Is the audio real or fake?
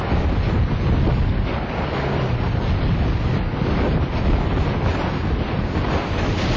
real